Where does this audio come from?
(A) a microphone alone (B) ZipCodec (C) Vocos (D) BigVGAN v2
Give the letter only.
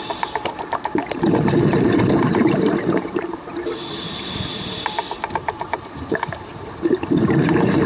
D